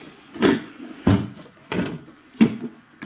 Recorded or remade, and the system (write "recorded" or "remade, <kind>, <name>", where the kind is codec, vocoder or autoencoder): remade, vocoder, Vocos